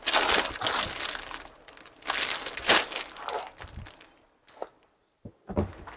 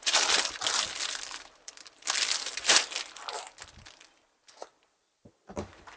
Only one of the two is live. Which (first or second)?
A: first